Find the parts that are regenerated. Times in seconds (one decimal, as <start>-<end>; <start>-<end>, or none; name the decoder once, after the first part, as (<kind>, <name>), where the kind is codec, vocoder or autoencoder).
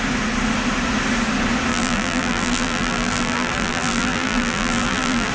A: 1.7-5.3 (vocoder, BigVGAN v2)